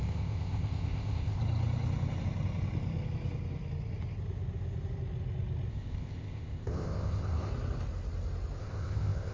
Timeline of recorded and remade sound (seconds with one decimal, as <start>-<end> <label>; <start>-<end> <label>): 0.0-1.4 remade; 1.4-5.7 recorded; 5.7-7.5 remade; 7.5-8.6 recorded; 8.6-9.3 remade